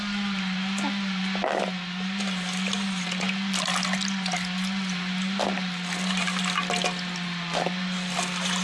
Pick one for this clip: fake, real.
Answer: real